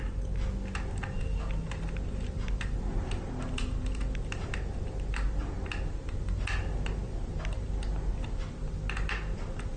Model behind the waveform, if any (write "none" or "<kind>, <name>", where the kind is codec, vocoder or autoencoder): none